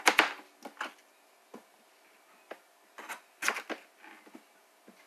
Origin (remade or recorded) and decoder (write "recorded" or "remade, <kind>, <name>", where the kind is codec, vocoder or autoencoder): recorded